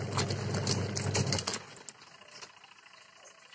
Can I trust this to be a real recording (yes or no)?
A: yes